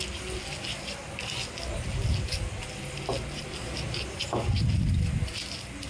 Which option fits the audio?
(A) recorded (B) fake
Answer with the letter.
A